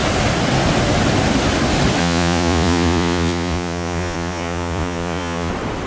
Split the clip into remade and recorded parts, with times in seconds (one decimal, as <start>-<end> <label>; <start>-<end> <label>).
0.0-2.0 recorded; 2.0-5.5 remade; 5.5-5.9 recorded